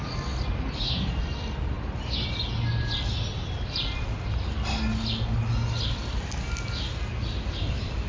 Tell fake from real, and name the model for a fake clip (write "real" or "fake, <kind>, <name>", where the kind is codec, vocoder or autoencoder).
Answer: real